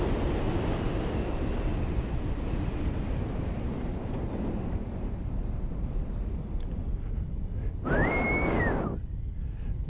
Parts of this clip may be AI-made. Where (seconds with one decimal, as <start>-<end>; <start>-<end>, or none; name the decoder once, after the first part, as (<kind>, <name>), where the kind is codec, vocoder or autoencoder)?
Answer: none